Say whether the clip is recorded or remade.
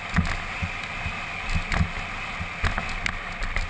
recorded